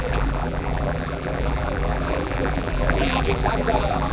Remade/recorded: remade